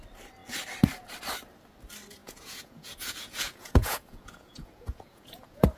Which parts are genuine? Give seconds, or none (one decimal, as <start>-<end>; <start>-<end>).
0.0-2.2